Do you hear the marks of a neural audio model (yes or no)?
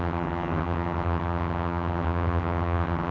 yes